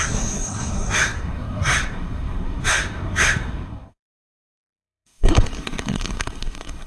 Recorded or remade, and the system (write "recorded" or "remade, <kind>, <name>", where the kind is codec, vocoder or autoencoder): remade, codec, SNAC